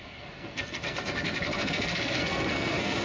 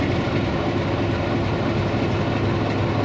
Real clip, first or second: second